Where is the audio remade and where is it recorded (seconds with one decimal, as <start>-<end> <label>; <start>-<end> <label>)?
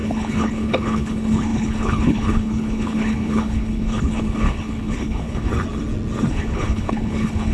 0.0-5.5 remade; 5.5-6.3 recorded; 6.3-7.5 remade